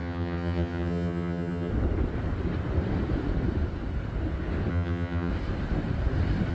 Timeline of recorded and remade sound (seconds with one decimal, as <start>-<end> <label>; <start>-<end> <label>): 0.0-1.7 remade; 1.7-4.7 recorded; 4.7-5.3 remade; 5.3-6.5 recorded